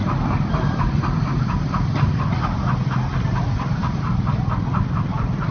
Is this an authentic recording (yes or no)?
yes